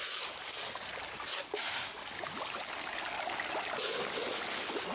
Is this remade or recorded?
recorded